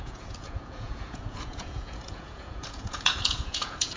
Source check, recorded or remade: remade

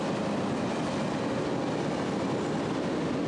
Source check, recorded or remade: recorded